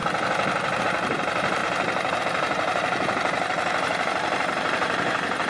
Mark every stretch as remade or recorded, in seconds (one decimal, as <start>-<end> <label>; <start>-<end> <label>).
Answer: 0.0-0.8 recorded; 0.8-5.5 remade